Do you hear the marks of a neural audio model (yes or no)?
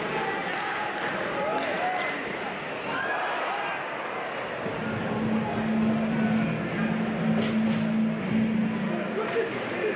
no